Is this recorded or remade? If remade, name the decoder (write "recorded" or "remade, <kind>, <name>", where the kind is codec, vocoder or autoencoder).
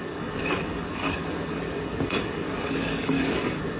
remade, codec, DAC